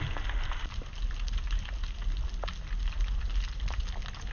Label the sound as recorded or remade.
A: recorded